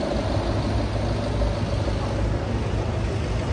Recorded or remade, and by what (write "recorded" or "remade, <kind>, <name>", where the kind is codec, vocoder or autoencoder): recorded